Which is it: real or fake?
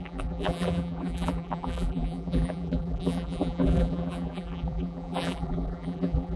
fake